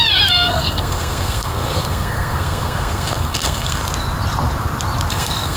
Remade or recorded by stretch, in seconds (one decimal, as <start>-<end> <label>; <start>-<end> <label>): 0.0-3.8 remade; 3.8-5.1 recorded; 5.1-5.6 remade